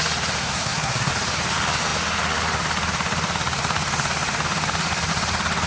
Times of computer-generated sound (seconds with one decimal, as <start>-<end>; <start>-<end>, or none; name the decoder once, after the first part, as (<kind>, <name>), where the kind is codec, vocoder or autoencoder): 0.4-1.1 (codec, SNAC)